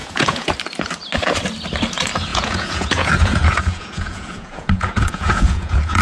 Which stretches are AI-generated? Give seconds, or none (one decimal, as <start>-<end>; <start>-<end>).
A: 0.0-0.5; 2.3-6.0

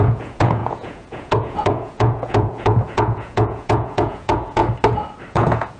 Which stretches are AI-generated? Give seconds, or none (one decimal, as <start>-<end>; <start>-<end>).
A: 0.0-4.6; 5.3-5.8